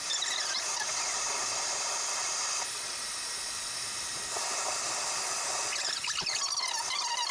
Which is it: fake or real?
real